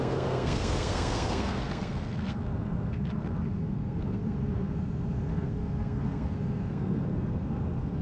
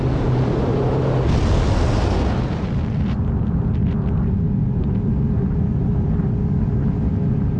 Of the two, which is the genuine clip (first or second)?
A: second